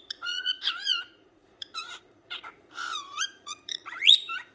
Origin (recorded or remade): remade